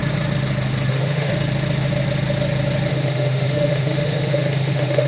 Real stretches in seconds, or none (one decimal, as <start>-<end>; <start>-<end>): 0.0-0.9; 1.3-2.9

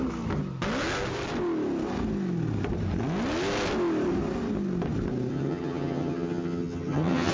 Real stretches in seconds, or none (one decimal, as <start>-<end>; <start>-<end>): 0.0-5.3

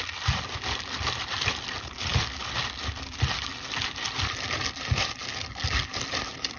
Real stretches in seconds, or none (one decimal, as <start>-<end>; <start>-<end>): 0.0-6.6